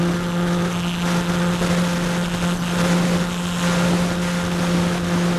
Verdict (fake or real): real